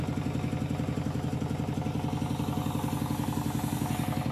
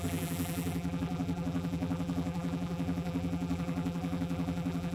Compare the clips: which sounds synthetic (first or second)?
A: second